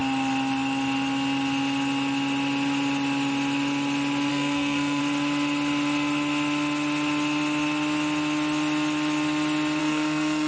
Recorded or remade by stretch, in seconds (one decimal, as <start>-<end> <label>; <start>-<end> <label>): 0.0-4.3 recorded; 4.3-5.0 remade; 5.0-9.8 recorded; 9.8-10.5 remade